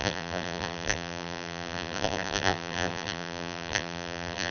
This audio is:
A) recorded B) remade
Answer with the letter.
B